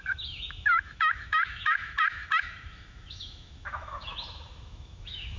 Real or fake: fake